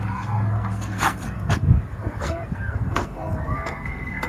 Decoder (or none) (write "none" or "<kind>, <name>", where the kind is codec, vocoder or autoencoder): codec, SNAC